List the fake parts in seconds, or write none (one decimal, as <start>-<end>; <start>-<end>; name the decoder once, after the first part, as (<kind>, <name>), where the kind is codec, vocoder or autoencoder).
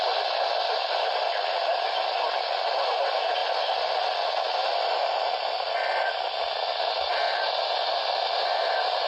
none